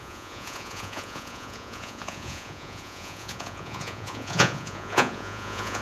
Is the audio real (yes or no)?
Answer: no